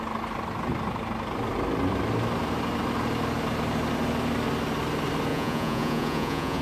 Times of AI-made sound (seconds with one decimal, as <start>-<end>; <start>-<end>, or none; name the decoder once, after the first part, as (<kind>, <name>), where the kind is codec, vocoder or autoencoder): 5.3-6.6 (vocoder, Vocos)